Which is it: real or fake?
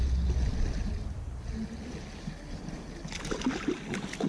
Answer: real